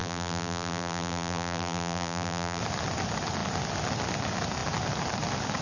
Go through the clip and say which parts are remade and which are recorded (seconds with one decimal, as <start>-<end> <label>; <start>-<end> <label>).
0.0-2.6 remade; 2.6-5.6 recorded